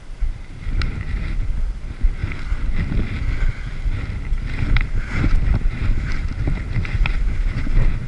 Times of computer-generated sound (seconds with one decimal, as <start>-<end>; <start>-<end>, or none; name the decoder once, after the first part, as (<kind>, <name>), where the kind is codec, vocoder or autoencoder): 0.0-2.2 (vocoder, BigVGAN v2); 4.7-8.1